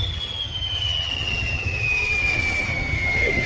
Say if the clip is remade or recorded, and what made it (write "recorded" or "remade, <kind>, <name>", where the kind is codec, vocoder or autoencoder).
remade, vocoder, HiFi-GAN